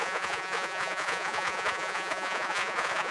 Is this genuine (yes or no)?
no